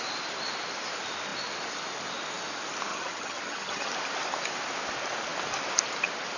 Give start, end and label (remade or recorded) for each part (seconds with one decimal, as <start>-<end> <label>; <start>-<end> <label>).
0.0-2.9 recorded; 2.9-3.9 remade; 3.9-6.4 recorded